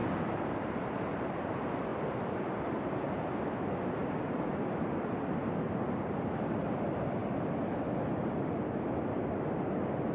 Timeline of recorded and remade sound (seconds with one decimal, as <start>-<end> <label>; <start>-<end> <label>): 0.0-0.5 remade; 0.5-1.9 recorded; 1.9-3.1 remade; 3.1-10.1 recorded